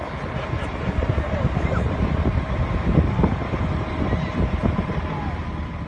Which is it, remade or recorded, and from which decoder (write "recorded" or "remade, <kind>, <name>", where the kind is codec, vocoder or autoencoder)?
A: recorded